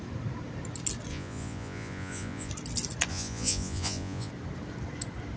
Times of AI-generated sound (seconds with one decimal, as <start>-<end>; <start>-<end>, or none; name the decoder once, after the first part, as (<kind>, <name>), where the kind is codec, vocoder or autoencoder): 1.1-2.5 (vocoder, Vocos); 3.1-4.3